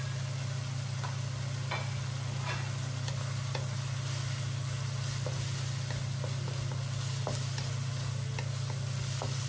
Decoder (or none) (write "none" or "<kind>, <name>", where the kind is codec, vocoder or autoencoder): none